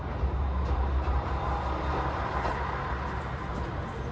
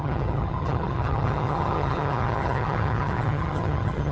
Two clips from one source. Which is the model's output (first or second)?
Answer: second